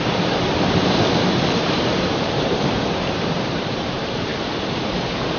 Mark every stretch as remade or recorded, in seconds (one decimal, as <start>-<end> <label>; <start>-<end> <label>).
0.0-4.3 remade; 4.3-5.4 recorded